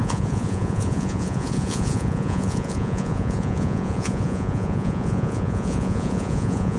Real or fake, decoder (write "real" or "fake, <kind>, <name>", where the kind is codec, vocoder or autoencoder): fake, vocoder, Vocos